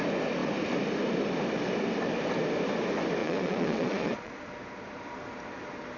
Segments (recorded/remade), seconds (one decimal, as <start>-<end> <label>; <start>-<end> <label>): 0.0-3.2 recorded; 3.2-4.3 remade; 4.3-6.0 recorded